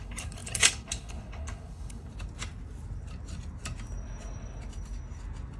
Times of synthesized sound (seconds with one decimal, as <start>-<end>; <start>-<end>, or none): 0.0-2.1